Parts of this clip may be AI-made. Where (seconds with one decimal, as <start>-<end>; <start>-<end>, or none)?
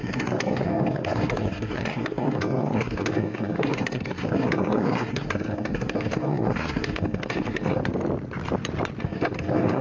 0.0-7.8; 9.0-9.8